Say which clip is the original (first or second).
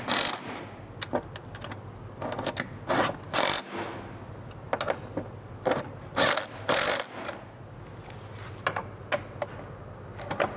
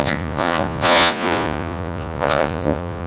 first